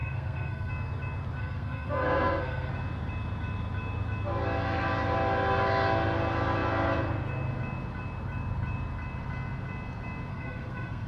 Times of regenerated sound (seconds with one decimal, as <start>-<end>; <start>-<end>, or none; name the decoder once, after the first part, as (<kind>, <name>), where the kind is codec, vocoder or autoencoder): 0.0-0.7 (codec, SNAC); 1.4-2.7; 10.3-11.1